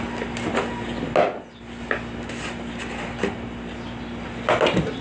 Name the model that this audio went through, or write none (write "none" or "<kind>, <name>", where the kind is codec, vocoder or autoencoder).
none